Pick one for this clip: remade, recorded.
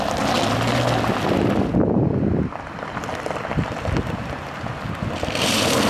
recorded